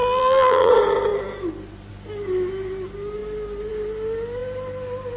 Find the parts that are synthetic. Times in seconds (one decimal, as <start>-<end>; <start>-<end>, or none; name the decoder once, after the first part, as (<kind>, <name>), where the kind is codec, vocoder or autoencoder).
0.0-0.7 (vocoder, BigVGAN v2)